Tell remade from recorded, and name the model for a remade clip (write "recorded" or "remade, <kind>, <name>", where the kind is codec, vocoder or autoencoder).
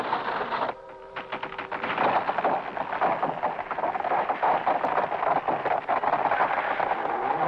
recorded